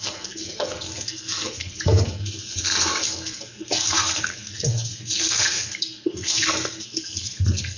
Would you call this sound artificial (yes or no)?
yes